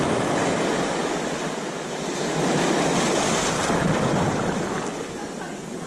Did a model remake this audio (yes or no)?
no